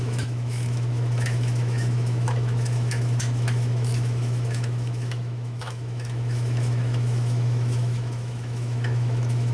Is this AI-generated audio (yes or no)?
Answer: yes